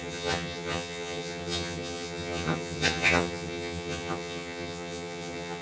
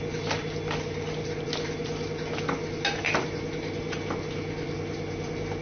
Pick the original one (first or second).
second